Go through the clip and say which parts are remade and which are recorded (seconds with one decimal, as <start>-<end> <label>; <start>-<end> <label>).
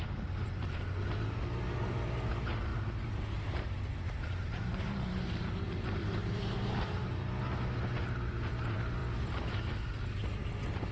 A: 0.0-2.7 recorded; 2.7-7.3 remade; 7.3-10.9 recorded